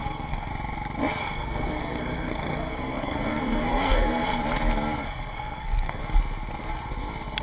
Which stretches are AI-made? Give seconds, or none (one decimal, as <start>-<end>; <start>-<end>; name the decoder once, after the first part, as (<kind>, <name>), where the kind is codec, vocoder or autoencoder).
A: 0.0-0.5 (codec, SNAC); 1.2-4.4; 5.0-6.0